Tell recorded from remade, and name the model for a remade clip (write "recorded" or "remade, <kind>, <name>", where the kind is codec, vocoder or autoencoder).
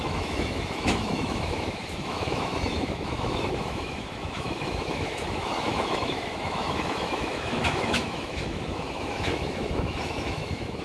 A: remade, autoencoder, DAC-VAE